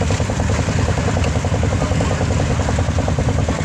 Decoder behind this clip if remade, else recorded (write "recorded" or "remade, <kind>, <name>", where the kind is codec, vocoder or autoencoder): recorded